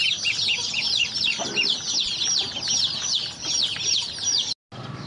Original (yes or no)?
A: yes